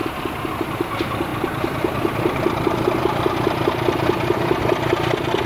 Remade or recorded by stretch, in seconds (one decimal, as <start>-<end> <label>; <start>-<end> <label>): 0.0-5.5 recorded